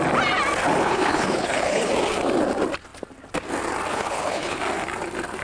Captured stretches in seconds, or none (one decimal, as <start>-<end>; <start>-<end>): 0.0-0.8; 1.9-3.9; 4.6-5.4

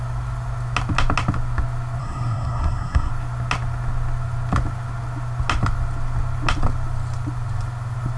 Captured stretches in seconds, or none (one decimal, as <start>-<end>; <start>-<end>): 0.0-2.0; 3.1-8.2

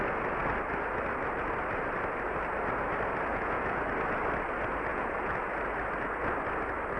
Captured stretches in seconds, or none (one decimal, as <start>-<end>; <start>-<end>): 0.0-3.3; 3.8-4.9; 5.5-7.0